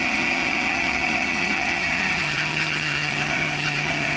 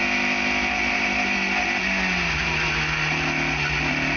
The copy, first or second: first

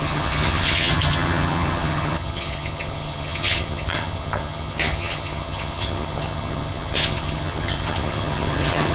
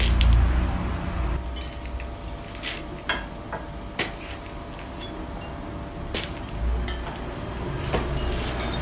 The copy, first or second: first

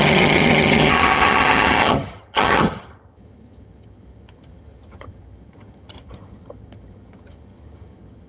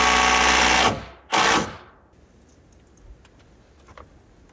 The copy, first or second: first